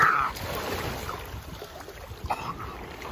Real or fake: real